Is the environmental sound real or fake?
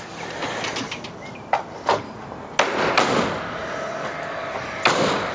real